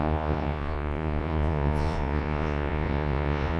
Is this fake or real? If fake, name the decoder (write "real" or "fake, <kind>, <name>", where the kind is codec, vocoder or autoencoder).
fake, vocoder, Vocos